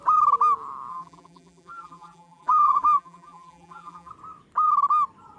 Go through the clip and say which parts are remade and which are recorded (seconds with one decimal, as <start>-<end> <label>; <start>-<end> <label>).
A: 0.0-0.9 recorded; 0.9-4.1 remade; 4.1-5.4 recorded